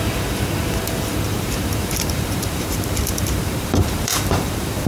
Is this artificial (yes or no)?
yes